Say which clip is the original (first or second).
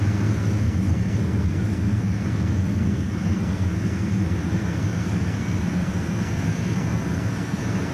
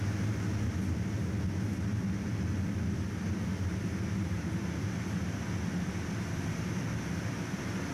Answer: second